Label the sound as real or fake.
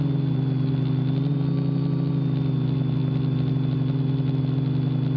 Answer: real